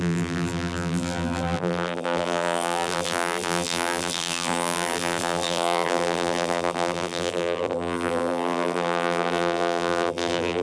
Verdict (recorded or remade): remade